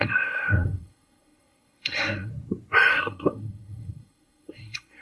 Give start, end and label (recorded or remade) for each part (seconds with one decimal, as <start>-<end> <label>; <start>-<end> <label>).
0.0-2.3 remade; 2.3-2.9 recorded; 2.9-5.0 remade